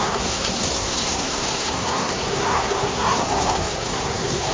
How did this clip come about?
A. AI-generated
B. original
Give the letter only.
A